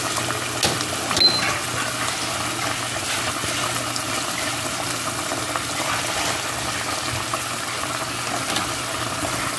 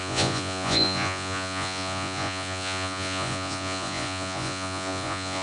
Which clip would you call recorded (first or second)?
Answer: first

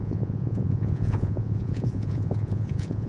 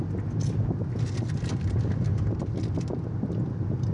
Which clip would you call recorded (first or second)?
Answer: second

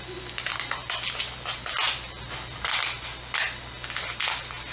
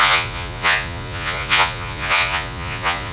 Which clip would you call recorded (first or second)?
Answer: first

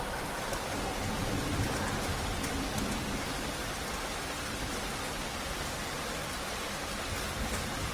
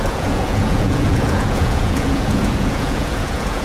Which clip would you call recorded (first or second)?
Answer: first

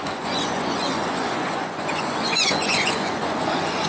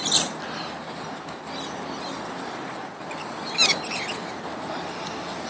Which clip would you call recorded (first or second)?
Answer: second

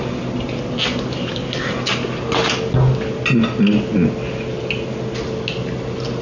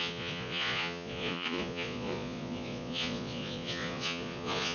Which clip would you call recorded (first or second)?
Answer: first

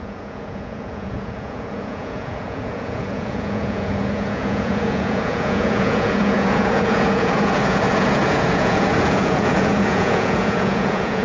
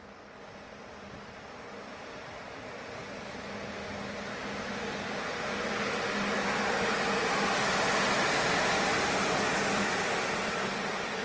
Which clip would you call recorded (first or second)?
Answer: second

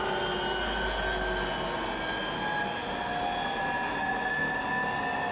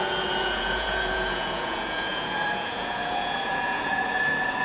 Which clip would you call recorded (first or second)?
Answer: first